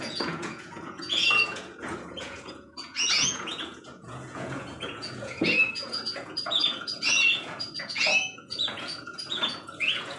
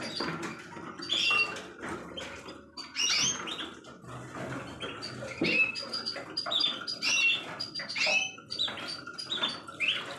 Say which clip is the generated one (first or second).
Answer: first